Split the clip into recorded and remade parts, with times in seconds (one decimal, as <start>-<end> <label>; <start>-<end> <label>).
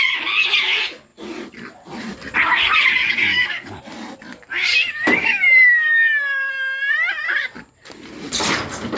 0.0-3.3 recorded; 3.3-3.8 remade; 3.8-4.7 recorded; 4.7-6.5 remade; 6.5-9.0 recorded